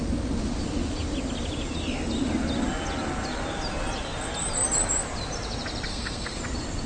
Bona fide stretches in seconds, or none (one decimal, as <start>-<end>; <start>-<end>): 0.0-5.9; 6.4-6.9